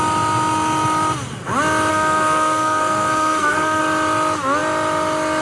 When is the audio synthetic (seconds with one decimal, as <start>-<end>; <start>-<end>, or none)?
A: 1.9-3.8